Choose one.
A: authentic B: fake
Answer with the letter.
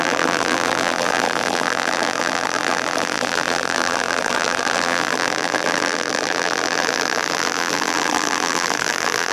B